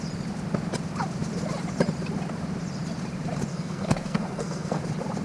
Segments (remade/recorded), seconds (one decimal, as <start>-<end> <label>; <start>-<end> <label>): 0.0-3.5 recorded; 3.5-4.8 remade; 4.8-5.2 recorded